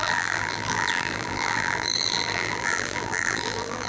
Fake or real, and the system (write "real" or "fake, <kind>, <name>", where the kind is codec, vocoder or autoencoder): fake, vocoder, BigVGAN v2